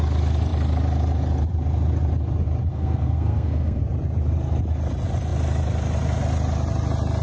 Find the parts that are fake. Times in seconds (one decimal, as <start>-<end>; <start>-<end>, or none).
2.7-3.8